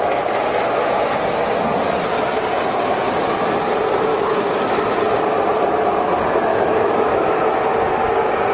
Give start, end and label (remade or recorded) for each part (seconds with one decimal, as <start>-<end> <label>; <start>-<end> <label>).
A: 0.0-4.1 recorded; 4.1-4.7 remade; 4.7-6.5 recorded; 6.5-7.4 remade; 7.4-8.5 recorded